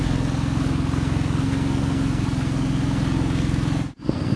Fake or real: fake